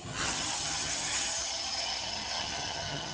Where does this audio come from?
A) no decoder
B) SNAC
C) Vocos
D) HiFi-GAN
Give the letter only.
D